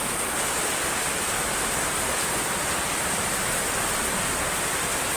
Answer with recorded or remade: recorded